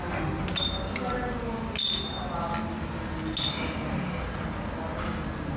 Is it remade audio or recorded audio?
recorded